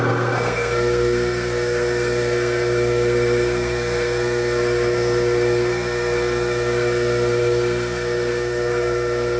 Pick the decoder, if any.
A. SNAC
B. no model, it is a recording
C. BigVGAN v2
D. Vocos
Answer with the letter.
A